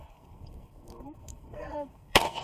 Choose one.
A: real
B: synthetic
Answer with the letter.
B